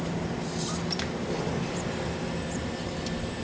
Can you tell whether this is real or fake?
fake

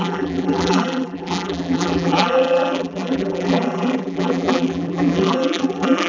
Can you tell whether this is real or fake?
fake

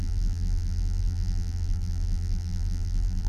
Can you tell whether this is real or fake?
fake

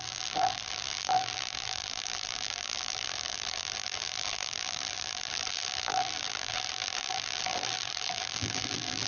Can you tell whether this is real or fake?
fake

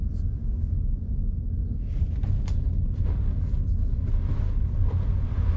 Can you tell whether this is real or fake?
real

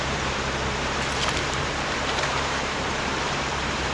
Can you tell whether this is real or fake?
fake